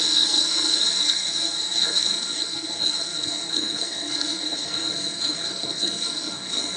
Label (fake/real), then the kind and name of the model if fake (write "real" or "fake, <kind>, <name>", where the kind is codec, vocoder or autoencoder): fake, codec, SNAC